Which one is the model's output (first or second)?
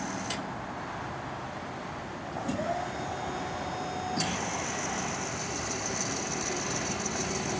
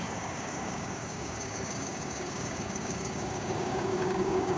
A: second